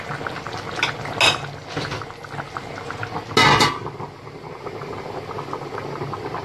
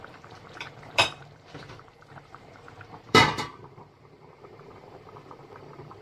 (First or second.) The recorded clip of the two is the first